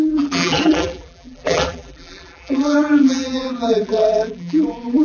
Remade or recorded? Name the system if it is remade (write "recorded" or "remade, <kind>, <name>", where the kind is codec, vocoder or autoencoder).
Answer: remade, vocoder, BigVGAN v2